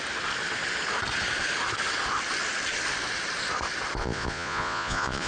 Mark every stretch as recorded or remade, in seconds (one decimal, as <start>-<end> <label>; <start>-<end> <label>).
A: 0.0-4.0 recorded; 4.0-5.3 remade